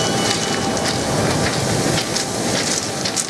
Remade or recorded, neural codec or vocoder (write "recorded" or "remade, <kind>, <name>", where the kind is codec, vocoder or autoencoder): recorded